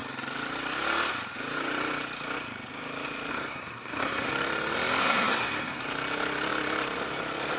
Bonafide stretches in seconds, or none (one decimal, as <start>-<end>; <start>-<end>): 0.0-3.3; 4.3-5.0; 5.8-7.6